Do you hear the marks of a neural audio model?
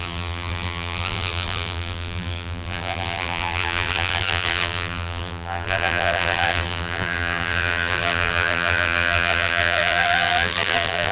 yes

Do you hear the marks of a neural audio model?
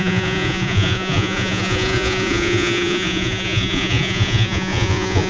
yes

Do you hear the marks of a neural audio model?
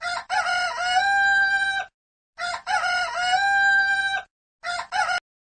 no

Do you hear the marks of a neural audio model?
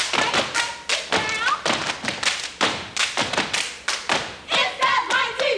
no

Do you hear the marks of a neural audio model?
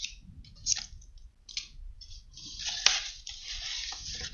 no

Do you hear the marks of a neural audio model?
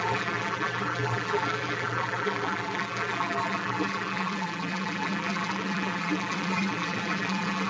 yes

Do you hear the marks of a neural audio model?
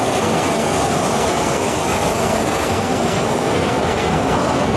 yes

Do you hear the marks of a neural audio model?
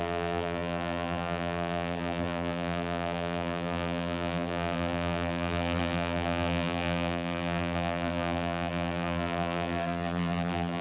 yes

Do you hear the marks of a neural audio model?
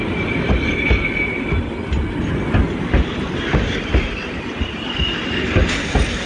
no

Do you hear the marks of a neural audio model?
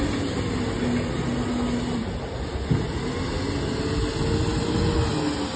no